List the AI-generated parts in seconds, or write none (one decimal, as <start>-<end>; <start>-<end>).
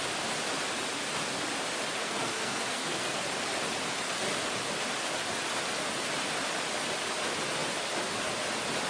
2.0-3.2